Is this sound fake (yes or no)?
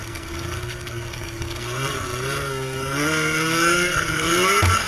yes